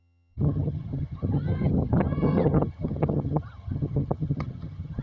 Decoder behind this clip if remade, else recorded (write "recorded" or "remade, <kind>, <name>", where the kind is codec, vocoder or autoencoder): remade, vocoder, HiFi-GAN